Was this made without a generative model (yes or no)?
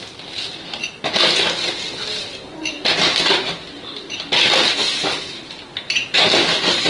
yes